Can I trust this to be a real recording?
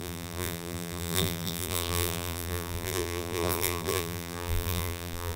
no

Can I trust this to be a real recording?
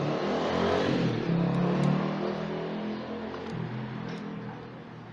yes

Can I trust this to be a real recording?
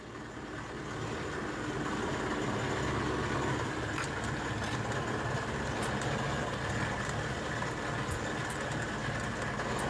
yes